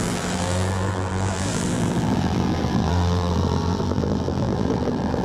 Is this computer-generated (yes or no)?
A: yes